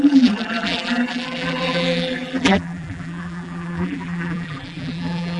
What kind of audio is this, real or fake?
fake